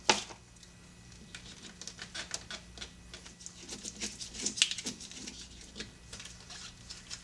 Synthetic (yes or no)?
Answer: no